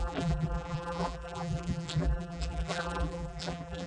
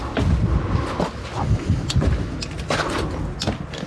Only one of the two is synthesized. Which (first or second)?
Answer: first